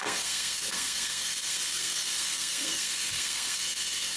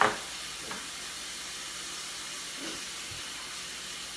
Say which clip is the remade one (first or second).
first